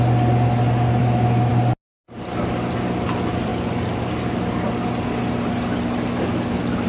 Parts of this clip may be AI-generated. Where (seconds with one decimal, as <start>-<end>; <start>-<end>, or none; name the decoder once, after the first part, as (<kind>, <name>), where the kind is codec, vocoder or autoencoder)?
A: 1.0-1.5 (autoencoder, DAC-VAE)